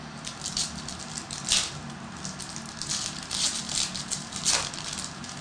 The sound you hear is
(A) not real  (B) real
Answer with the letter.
B